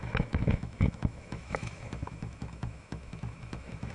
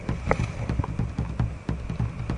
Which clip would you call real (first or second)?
second